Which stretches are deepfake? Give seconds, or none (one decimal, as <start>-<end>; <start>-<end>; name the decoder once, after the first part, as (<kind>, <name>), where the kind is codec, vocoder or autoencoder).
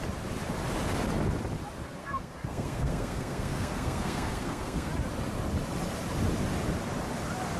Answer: 2.0-4.9 (codec, SNAC)